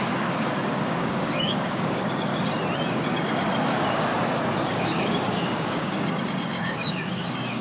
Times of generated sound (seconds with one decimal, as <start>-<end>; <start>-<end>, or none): 0.0-2.3; 2.9-4.1; 4.7-7.6